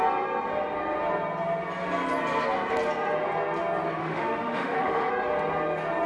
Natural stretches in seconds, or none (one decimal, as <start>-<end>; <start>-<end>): 0.0-4.0; 5.1-6.1